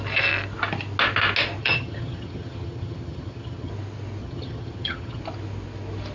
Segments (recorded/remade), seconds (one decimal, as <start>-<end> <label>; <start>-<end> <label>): 0.0-1.6 recorded; 1.6-3.7 remade; 3.7-4.2 recorded; 4.2-5.2 remade; 5.2-6.1 recorded